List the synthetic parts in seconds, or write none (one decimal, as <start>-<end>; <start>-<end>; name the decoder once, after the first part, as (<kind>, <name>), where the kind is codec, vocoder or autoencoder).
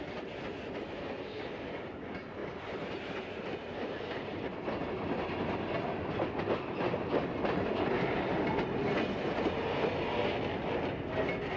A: 2.4-3.1 (vocoder, BigVGAN v2)